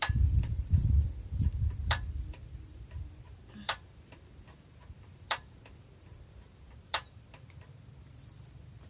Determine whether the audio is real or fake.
fake